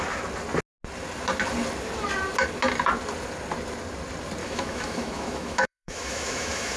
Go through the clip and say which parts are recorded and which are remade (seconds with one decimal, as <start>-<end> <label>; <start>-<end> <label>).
0.0-4.4 recorded; 4.4-6.8 remade